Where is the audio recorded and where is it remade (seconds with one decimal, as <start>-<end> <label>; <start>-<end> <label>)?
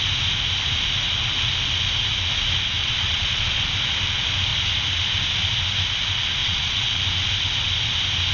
0.0-2.8 recorded; 2.8-3.6 remade; 3.6-6.4 recorded; 6.4-7.0 remade; 7.0-8.3 recorded